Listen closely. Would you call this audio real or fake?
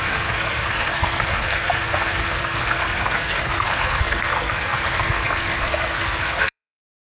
fake